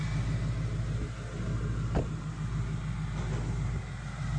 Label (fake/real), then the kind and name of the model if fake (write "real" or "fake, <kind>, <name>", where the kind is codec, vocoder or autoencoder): real